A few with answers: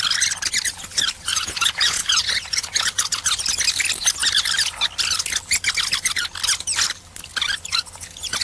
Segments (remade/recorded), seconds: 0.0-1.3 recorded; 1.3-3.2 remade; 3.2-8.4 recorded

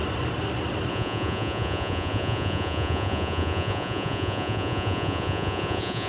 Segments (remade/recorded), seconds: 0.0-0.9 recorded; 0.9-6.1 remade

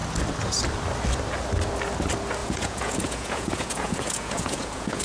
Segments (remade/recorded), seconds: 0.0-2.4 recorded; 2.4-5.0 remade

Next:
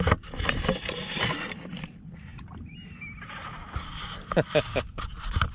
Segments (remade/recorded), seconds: 0.0-5.5 recorded

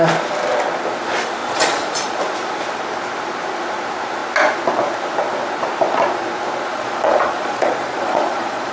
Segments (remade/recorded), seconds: 0.0-1.4 recorded; 1.4-2.2 remade; 2.2-6.7 recorded; 6.7-8.7 remade

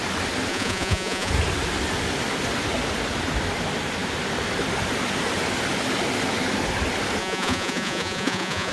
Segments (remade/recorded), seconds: 0.0-0.5 recorded; 0.5-1.3 remade; 1.3-7.2 recorded; 7.2-8.7 remade

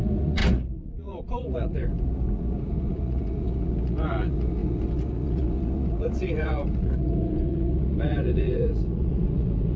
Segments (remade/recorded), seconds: 0.0-9.8 remade